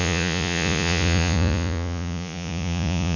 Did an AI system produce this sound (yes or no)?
yes